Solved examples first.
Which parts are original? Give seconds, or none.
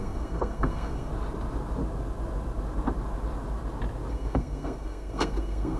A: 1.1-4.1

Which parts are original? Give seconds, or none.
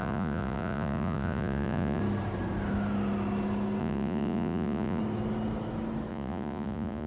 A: 2.0-3.8; 5.0-6.1